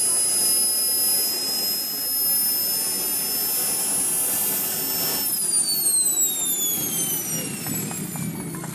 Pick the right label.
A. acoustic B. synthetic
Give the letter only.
A